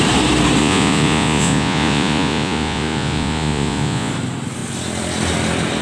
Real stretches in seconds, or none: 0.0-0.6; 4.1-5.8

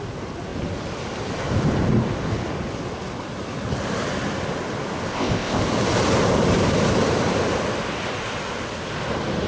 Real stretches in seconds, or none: 0.0-5.1; 5.6-9.5